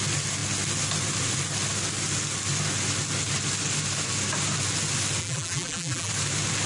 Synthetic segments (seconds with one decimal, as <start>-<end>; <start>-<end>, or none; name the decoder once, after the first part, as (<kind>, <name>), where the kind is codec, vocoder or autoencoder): 5.2-6.1 (vocoder, BigVGAN v2)